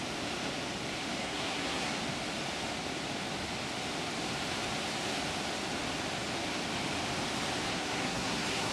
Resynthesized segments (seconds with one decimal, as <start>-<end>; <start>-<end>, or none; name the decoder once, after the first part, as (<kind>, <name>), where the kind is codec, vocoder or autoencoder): 1.2-1.9 (codec, SNAC); 7.7-8.7